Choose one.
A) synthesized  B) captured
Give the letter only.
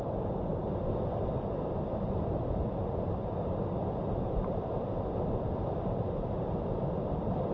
B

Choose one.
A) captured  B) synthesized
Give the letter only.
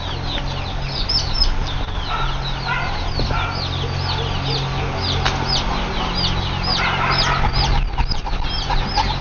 A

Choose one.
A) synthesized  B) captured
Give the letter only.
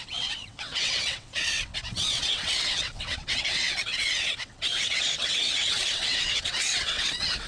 A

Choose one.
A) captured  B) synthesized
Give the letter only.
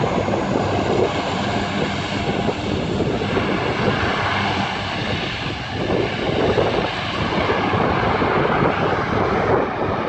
A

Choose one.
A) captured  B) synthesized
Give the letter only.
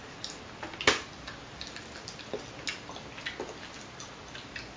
A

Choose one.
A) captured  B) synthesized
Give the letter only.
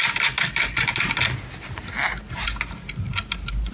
A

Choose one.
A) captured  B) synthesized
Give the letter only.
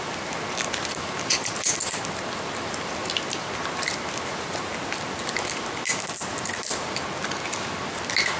A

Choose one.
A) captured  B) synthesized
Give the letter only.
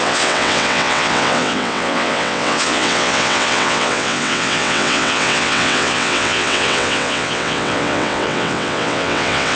B